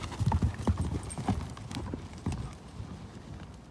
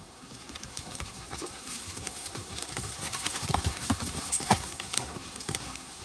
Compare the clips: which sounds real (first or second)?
first